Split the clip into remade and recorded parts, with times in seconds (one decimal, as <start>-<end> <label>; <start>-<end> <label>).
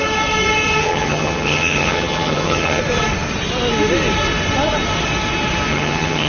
0.0-0.8 recorded; 0.8-2.8 remade; 2.8-5.7 recorded; 5.7-6.3 remade